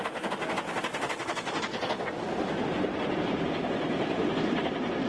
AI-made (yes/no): no